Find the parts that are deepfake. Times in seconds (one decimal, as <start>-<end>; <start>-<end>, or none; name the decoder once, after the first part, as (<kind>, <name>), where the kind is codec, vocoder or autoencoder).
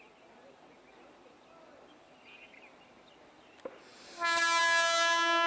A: none